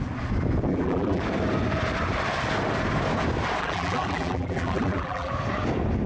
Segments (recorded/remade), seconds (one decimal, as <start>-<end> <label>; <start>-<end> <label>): 0.0-0.7 recorded; 0.7-1.2 remade; 1.2-3.6 recorded; 3.6-5.3 remade; 5.3-6.1 recorded